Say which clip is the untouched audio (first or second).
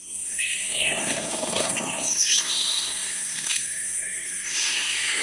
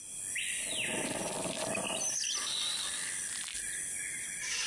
second